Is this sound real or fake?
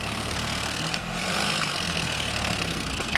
fake